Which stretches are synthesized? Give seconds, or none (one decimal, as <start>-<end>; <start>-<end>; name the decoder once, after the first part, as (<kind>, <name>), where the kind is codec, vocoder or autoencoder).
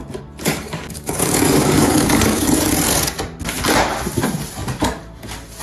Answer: 0.5-2.7 (codec, DAC)